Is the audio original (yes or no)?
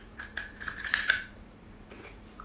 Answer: no